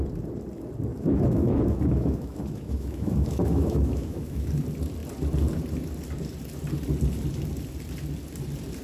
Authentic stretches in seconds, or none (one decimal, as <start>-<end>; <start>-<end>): 0.0-0.9; 4.5-8.8